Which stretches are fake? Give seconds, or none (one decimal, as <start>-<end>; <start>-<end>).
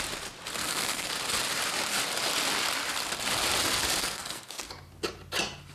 0.6-1.1; 4.0-4.7